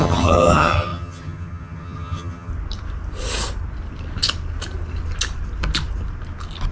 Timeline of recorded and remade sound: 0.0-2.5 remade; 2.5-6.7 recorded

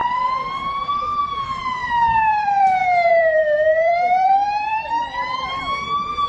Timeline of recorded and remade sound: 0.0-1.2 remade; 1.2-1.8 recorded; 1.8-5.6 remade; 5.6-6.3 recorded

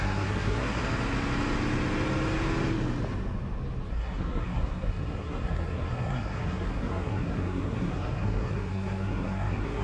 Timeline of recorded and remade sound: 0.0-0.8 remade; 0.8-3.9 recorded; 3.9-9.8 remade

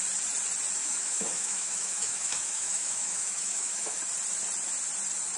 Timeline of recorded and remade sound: 0.0-0.8 recorded; 0.8-4.0 remade; 4.0-5.4 recorded

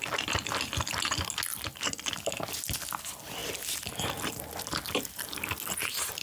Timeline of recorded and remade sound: 0.0-6.2 recorded

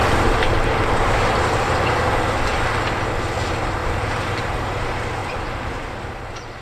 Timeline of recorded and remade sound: 0.0-1.1 remade; 1.1-3.8 recorded; 3.8-4.4 remade; 4.4-5.2 recorded; 5.2-5.9 remade; 5.9-6.6 recorded

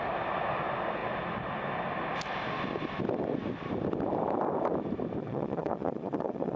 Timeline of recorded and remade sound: 0.0-5.2 recorded; 5.2-6.6 remade